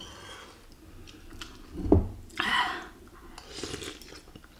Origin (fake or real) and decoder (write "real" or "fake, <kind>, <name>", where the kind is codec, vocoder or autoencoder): real